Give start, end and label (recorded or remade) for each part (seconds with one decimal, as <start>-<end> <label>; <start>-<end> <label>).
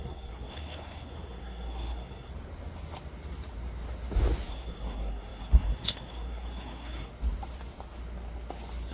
0.0-2.3 remade; 2.3-4.5 recorded; 4.5-7.1 remade; 7.1-8.9 recorded